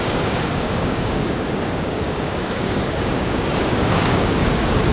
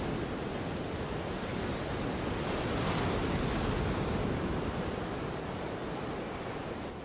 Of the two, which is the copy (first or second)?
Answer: first